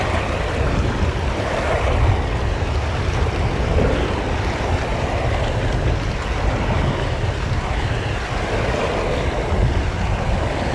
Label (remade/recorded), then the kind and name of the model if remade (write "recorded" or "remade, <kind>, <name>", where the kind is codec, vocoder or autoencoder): recorded